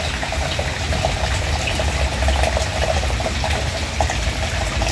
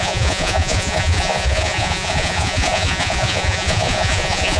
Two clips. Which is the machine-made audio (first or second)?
second